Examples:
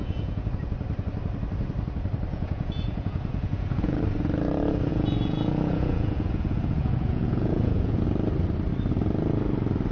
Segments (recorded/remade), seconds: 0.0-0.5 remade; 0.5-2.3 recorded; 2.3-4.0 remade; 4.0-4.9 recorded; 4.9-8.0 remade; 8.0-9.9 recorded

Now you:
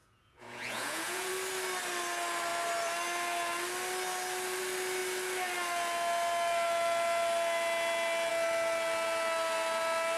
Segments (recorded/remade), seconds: 0.0-1.3 remade; 1.3-10.2 recorded

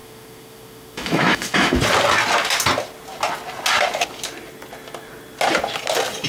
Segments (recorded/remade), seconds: 0.0-1.8 remade; 1.8-6.3 recorded

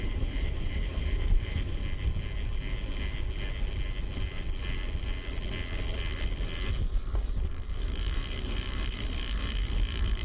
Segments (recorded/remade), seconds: 0.0-1.8 remade; 1.8-6.9 recorded; 6.9-10.2 remade